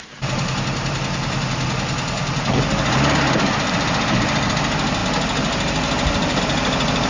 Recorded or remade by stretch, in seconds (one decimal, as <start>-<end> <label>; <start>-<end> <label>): 0.0-7.1 recorded